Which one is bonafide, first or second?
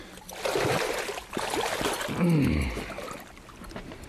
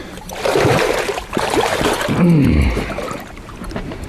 first